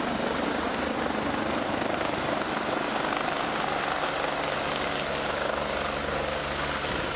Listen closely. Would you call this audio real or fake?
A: real